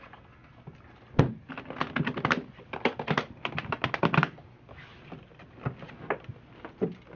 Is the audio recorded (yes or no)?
yes